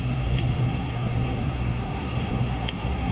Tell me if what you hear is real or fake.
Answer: fake